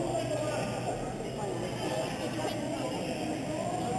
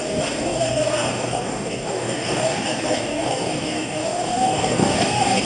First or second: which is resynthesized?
second